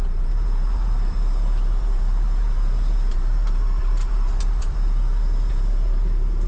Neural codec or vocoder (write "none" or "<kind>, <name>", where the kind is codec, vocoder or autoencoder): vocoder, BigVGAN v2